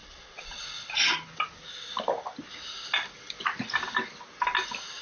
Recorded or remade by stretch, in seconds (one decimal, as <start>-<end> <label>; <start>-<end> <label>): 0.0-0.6 remade; 0.6-5.0 recorded

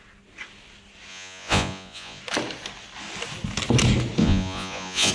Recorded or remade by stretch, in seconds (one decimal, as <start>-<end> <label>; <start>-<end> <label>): 0.0-1.1 recorded; 1.1-2.2 remade; 2.2-4.2 recorded; 4.2-5.1 remade